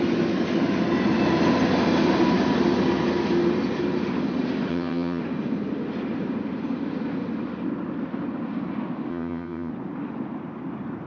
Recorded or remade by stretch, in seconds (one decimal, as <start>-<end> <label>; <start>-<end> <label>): 0.0-4.7 recorded; 4.7-5.2 remade; 5.2-9.1 recorded; 9.1-9.7 remade; 9.7-11.1 recorded